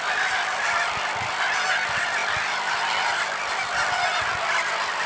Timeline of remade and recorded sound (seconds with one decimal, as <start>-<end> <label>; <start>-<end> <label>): 0.0-5.1 recorded